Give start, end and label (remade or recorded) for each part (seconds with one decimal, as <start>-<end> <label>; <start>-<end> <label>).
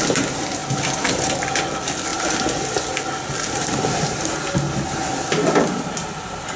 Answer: 0.0-6.6 recorded